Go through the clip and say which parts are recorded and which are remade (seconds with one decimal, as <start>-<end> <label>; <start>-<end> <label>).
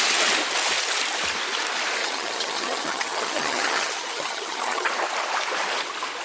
0.0-2.0 recorded; 2.0-4.9 remade; 4.9-6.2 recorded